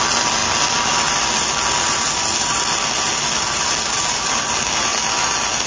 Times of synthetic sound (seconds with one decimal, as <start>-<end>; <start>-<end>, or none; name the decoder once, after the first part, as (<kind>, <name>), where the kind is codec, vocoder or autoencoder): none